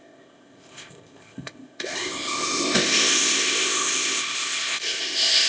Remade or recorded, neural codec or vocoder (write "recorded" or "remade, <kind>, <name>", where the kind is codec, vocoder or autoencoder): remade, codec, ZipCodec